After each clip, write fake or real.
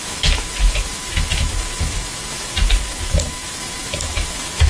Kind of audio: fake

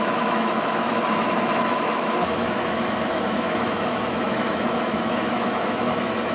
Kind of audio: fake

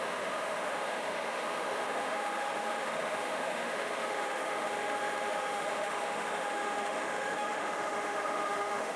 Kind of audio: fake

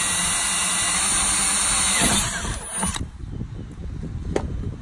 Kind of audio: real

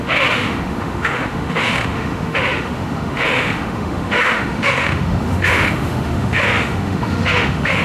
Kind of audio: fake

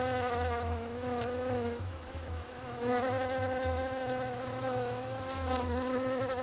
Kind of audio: fake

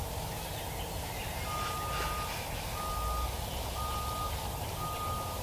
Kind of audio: real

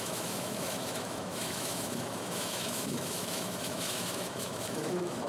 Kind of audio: fake